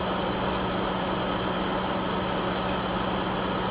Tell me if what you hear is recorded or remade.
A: recorded